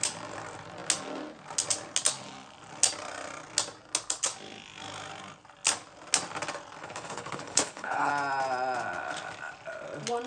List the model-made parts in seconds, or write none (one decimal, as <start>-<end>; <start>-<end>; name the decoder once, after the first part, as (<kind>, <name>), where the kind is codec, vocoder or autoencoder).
6.8-8.1 (codec, HILCodec)